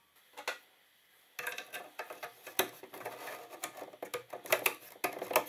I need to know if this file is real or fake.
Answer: real